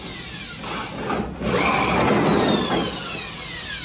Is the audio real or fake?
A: real